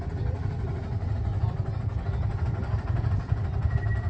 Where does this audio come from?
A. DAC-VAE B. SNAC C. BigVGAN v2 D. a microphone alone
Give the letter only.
D